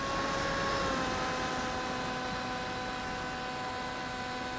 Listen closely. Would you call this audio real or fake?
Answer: real